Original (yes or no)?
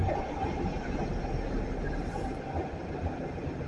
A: yes